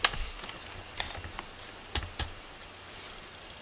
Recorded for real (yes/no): yes